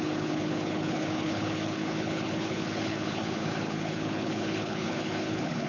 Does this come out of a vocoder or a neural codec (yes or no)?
yes